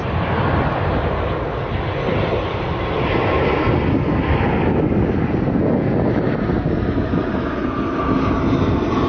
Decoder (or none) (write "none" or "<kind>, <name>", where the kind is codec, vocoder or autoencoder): none